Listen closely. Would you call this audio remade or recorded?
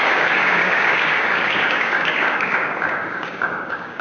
remade